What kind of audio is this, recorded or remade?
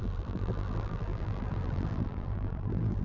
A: remade